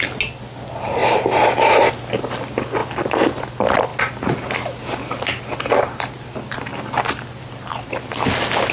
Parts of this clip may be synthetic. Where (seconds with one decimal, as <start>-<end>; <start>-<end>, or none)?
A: none